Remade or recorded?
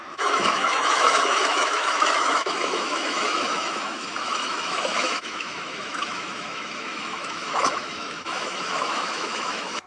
remade